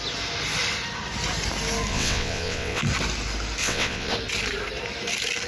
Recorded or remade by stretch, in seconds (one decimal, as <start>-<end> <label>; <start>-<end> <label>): 0.0-1.9 recorded; 1.9-2.8 remade; 2.8-3.6 recorded; 3.6-4.1 remade; 4.1-5.5 recorded